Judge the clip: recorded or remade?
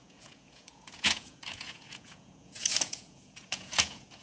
remade